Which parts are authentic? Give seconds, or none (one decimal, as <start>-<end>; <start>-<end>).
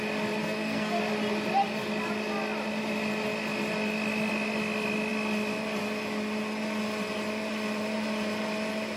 0.0-0.4; 1.0-9.0